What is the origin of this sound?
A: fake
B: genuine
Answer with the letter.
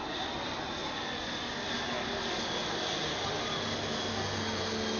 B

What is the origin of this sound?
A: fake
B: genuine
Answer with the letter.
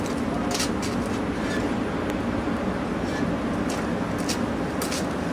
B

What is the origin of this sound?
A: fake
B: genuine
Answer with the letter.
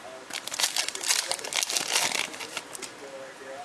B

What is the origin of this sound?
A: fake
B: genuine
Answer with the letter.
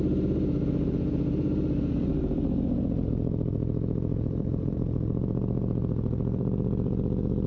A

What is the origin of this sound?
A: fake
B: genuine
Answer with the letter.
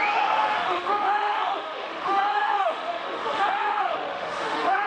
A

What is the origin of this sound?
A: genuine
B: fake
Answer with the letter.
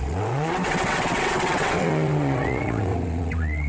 B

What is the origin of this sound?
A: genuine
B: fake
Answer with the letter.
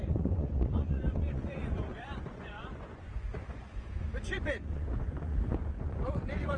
B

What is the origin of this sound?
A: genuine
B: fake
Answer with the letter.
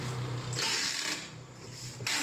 A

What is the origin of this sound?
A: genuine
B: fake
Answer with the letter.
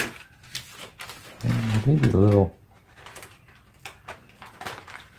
A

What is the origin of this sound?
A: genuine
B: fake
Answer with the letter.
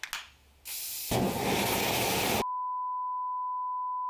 A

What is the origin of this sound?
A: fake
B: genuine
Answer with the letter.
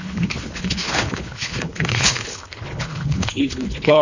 A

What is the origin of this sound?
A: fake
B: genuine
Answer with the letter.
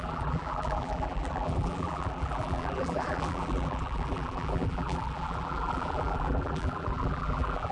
A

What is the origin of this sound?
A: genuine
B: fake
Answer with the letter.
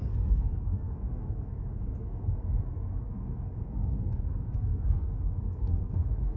B